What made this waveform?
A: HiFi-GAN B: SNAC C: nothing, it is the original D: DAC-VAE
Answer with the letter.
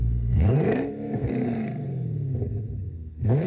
B